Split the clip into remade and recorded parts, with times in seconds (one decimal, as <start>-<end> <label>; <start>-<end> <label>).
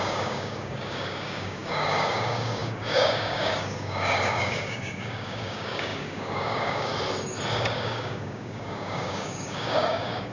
0.0-6.9 remade; 6.9-7.5 recorded; 7.5-10.3 remade